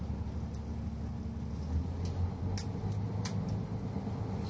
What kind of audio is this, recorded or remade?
recorded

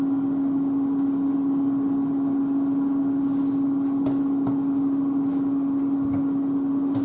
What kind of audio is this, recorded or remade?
recorded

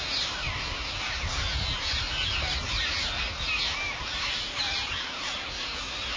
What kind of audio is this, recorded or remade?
recorded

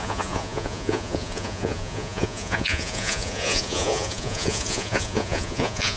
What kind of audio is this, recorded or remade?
remade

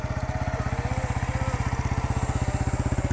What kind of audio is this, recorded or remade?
recorded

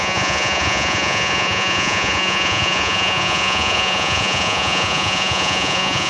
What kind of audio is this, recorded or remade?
remade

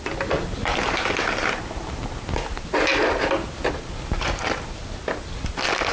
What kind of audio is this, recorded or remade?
recorded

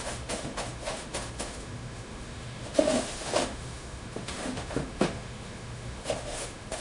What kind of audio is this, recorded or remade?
remade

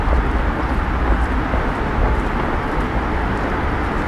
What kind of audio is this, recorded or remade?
recorded